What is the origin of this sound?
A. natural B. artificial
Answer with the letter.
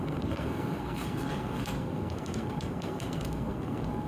B